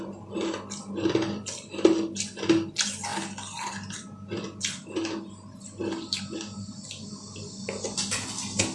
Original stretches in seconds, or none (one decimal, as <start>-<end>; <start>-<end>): 0.0-8.7